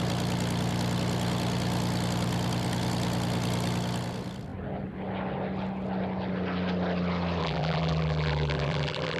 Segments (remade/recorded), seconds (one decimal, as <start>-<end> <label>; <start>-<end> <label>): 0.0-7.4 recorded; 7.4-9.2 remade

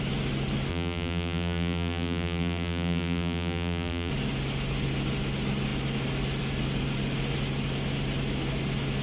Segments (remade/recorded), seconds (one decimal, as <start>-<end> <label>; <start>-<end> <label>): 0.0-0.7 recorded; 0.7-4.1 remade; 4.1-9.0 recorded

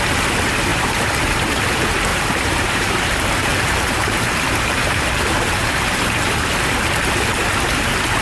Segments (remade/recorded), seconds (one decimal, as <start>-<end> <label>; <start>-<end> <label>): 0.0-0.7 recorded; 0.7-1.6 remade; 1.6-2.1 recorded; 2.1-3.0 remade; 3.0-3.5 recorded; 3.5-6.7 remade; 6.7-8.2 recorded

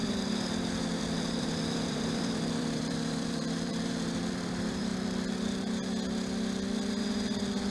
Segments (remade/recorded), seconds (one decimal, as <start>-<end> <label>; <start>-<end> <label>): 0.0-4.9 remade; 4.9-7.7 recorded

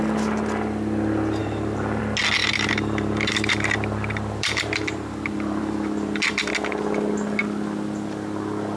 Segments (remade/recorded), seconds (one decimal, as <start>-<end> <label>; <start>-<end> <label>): 0.0-1.4 recorded; 1.4-2.0 remade; 2.0-2.4 recorded; 2.4-6.5 remade; 6.5-8.8 recorded

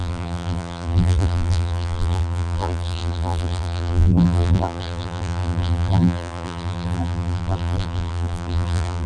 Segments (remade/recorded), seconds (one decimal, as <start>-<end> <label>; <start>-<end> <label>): 0.0-9.1 remade

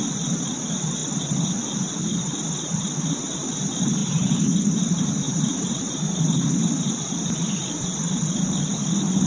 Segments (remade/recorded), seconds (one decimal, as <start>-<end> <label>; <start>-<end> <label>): 0.0-2.7 recorded; 2.7-3.3 remade; 3.3-4.0 recorded; 4.0-6.2 remade; 6.2-7.6 recorded; 7.6-8.2 remade; 8.2-9.3 recorded

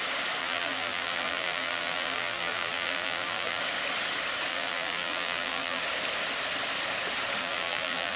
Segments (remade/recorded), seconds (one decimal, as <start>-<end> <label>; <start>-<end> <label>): 0.0-0.4 recorded; 0.4-3.6 remade; 3.6-4.5 recorded; 4.5-5.8 remade; 5.8-7.4 recorded; 7.4-8.2 remade